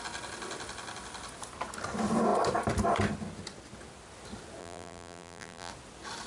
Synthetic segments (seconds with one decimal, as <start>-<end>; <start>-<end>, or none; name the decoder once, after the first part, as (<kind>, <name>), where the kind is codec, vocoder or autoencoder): 4.6-5.7 (vocoder, BigVGAN v2)